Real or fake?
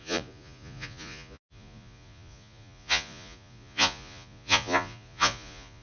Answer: fake